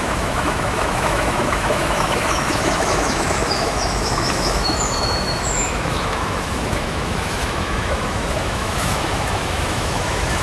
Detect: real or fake fake